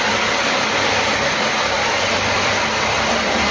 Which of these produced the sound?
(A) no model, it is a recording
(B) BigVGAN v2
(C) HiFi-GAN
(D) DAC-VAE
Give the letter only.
B